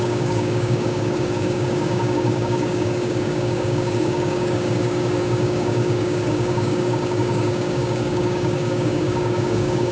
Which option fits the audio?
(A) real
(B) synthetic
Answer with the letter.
B